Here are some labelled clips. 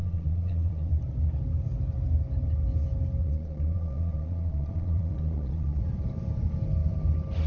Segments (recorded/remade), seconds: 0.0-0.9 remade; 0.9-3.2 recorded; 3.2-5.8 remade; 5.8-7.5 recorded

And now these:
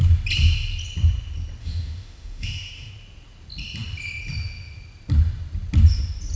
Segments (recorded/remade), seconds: 0.0-1.6 recorded; 1.6-2.9 remade; 2.9-6.4 recorded

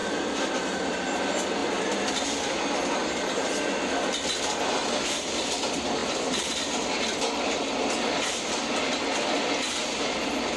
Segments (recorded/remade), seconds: 0.0-1.2 remade; 1.2-1.6 recorded; 1.6-2.6 remade; 2.6-3.0 recorded; 3.0-3.5 remade; 3.5-10.6 recorded